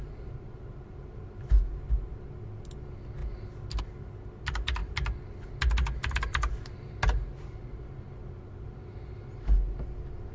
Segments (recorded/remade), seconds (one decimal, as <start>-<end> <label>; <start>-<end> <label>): 0.0-10.3 recorded